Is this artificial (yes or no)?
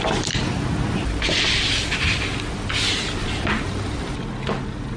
no